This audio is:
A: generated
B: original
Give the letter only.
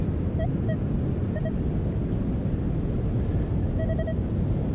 B